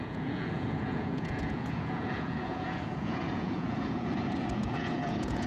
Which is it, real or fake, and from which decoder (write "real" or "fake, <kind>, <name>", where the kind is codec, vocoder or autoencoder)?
fake, vocoder, Vocos